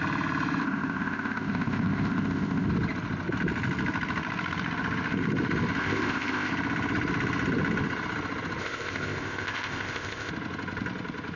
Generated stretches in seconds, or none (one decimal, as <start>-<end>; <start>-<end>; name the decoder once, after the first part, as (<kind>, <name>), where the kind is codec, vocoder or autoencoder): 0.6-2.7 (codec, ZipCodec); 5.8-6.5; 8.6-10.3